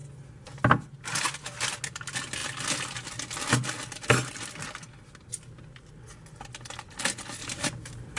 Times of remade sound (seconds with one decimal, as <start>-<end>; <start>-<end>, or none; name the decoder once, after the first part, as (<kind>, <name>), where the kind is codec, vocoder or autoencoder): 7.4-8.2 (vocoder, BigVGAN v2)